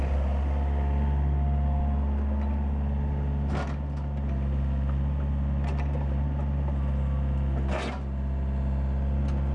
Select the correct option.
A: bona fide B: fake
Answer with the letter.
A